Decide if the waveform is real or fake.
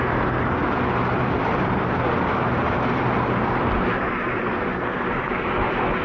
real